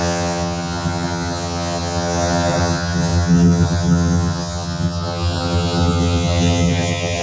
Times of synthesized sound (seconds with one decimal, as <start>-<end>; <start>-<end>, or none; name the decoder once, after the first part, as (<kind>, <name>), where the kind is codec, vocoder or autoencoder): 0.0-7.2 (vocoder, HiFi-GAN)